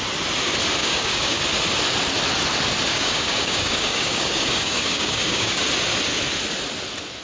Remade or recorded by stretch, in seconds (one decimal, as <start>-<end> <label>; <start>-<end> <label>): 0.0-0.8 recorded; 0.8-1.4 remade; 1.4-2.9 recorded; 2.9-5.6 remade; 5.6-7.2 recorded